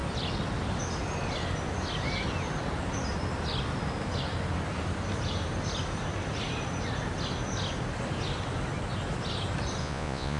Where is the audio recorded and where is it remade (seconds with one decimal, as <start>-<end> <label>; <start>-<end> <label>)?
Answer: 0.0-9.8 recorded; 9.8-10.4 remade